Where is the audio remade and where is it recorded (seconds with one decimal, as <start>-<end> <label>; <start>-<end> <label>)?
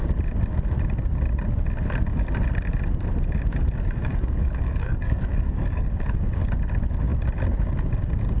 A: 0.0-4.0 recorded; 4.0-5.9 remade; 5.9-8.4 recorded